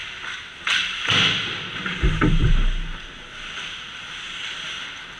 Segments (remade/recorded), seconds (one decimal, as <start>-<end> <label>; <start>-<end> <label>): 0.0-5.2 recorded